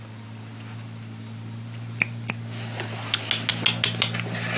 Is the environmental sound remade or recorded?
recorded